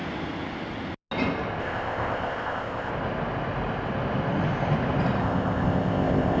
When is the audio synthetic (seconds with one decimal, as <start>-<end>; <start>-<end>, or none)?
1.6-2.9; 5.2-6.4

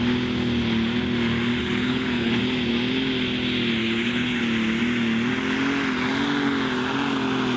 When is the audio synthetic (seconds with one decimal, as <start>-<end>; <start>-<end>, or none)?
1.6-2.4; 3.8-4.4

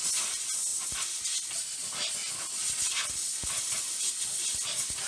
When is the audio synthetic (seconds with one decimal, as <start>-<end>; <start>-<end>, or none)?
none

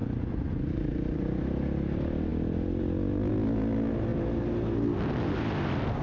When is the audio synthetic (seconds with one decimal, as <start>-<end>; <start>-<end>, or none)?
0.0-1.4